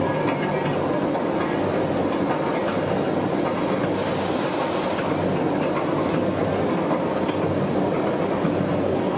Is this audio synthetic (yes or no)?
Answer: no